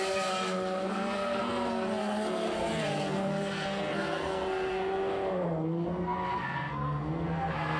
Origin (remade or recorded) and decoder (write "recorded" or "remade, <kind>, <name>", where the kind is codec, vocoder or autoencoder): remade, codec, SNAC